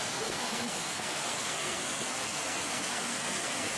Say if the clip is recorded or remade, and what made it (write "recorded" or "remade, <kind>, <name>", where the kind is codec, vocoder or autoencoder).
remade, codec, SNAC